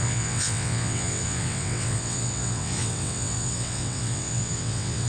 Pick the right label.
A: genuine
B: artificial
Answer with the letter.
B